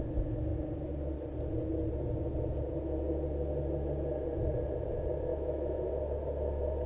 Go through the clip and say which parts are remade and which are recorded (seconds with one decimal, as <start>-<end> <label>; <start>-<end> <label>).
0.0-5.3 recorded; 5.3-5.9 remade; 5.9-6.9 recorded